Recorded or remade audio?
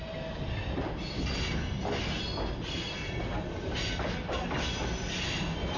recorded